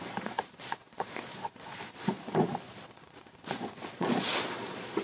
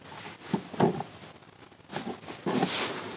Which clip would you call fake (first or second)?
first